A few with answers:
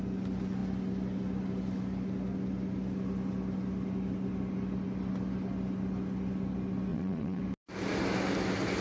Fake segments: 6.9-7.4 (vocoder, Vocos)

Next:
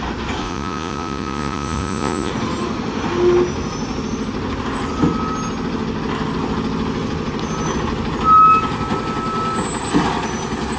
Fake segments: 0.4-2.3 (vocoder, Vocos)

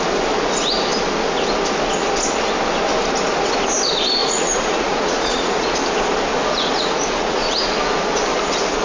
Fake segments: 4.2-5.8 (vocoder, Vocos); 6.3-7.7